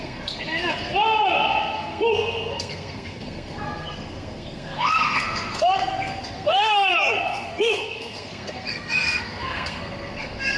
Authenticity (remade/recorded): remade